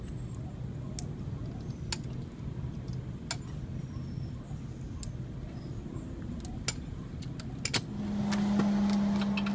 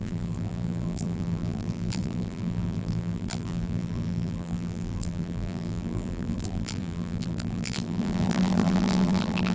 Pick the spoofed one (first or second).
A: second